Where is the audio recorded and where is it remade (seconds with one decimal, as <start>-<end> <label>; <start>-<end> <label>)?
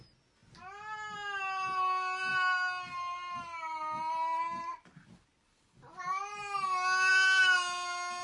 0.0-8.2 recorded